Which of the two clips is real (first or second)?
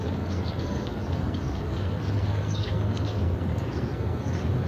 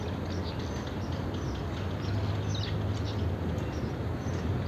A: second